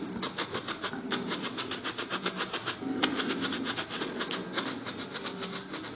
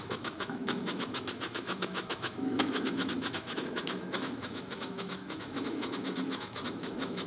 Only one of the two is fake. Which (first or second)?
second